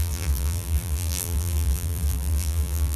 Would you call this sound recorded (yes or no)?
no